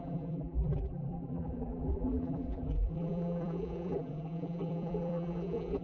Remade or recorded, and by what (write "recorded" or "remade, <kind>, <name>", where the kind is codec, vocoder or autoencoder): remade, vocoder, BigVGAN v2